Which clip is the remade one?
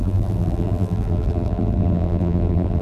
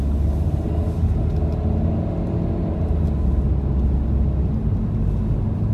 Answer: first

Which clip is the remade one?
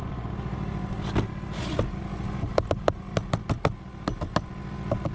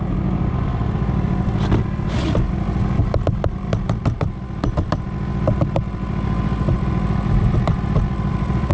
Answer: second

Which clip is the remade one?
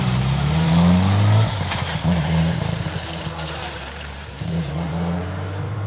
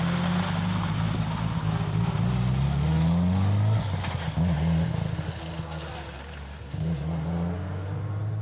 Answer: first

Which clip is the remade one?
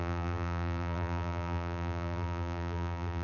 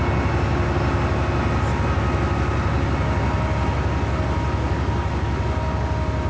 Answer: first